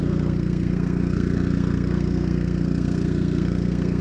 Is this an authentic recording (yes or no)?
no